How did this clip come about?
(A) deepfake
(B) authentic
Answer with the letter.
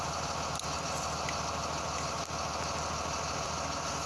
B